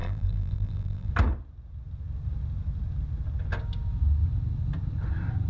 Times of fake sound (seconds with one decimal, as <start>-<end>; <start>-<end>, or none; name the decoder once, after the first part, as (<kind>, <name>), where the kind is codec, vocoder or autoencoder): 0.0-1.1 (vocoder, BigVGAN v2)